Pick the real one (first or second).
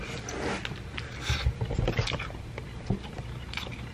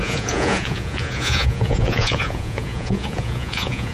first